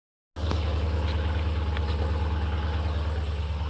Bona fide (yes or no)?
yes